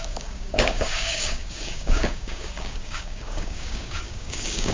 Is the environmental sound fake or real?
fake